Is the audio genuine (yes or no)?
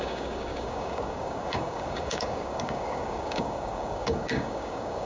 no